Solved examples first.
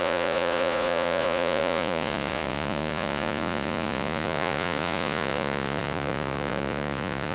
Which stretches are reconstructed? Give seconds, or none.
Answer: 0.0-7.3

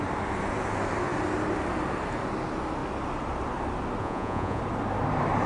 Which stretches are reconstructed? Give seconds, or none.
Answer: 4.0-4.6

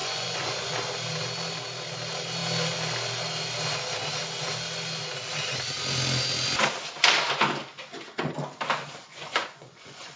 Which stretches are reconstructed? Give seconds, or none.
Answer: 0.0-0.7; 9.1-10.2

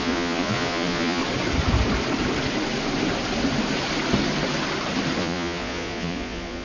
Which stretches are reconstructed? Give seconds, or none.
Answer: 0.0-1.2; 5.2-6.6